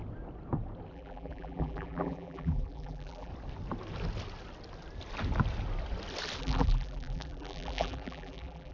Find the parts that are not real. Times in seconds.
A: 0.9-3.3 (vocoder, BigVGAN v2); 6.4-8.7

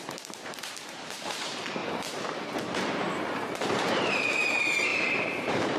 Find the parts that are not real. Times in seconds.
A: 0.0-1.8 (vocoder, BigVGAN v2); 2.8-5.8